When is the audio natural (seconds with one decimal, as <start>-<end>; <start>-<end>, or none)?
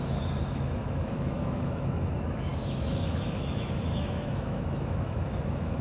none